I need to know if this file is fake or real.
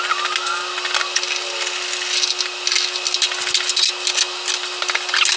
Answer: real